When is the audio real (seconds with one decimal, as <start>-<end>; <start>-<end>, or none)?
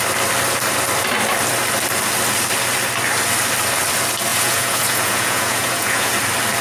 0.0-4.3; 6.1-6.6